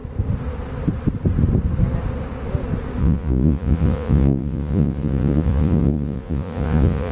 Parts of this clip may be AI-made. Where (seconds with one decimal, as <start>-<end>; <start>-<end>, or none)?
3.0-7.1